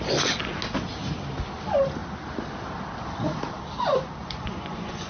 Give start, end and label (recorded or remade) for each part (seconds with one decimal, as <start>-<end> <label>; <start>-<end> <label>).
0.0-4.2 recorded; 4.2-5.1 remade